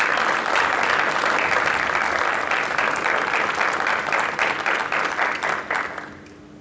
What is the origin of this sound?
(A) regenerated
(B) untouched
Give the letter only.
B